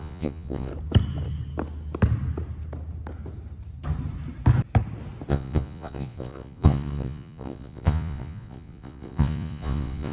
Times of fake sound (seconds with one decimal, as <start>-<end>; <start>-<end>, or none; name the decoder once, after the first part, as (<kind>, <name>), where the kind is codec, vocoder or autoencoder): 0.0-0.7 (vocoder, Vocos); 5.3-10.1